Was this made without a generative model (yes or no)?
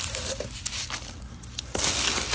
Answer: yes